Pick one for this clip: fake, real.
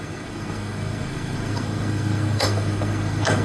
fake